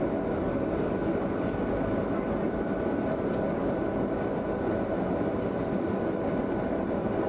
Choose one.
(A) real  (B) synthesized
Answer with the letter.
B